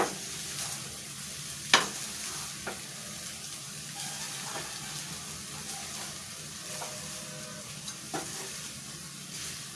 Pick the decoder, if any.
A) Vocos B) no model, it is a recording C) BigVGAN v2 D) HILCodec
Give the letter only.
B